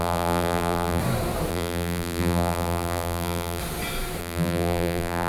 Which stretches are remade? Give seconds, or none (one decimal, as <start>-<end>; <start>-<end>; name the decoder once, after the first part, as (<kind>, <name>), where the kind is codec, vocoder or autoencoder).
0.0-1.0 (vocoder, BigVGAN v2); 1.5-3.6; 4.2-5.3